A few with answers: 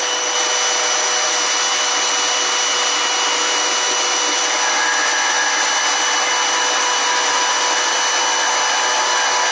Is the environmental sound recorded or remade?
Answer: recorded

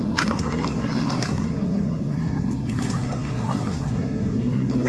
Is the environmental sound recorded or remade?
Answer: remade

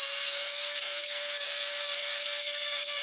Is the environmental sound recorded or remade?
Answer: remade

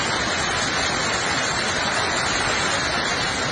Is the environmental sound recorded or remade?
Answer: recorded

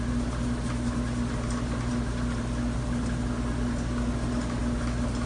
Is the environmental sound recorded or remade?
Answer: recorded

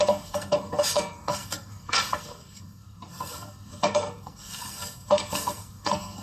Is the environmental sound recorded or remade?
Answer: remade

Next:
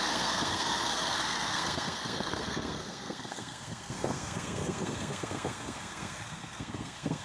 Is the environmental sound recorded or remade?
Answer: remade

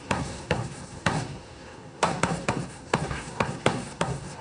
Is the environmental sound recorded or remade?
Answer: remade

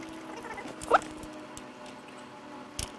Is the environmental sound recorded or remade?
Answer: recorded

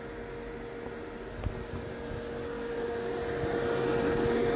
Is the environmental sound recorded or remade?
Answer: recorded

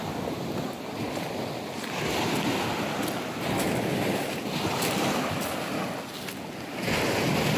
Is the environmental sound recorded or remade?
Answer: recorded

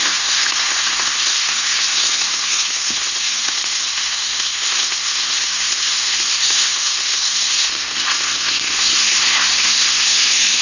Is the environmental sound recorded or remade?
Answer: remade